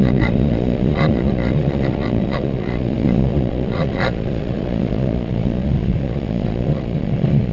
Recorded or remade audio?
remade